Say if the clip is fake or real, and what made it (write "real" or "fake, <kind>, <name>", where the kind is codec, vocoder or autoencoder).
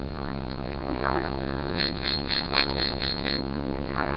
fake, vocoder, WaveNeXt